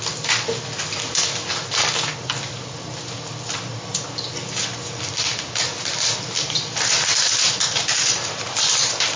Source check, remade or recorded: recorded